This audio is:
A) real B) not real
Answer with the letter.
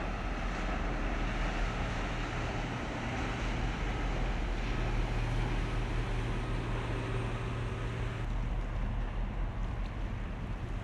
A